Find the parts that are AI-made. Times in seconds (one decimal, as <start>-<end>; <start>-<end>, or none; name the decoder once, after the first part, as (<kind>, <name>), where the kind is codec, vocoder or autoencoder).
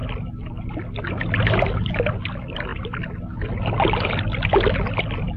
none